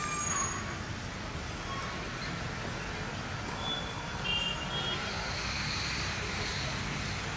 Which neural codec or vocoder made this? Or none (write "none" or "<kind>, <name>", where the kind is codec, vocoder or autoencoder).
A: none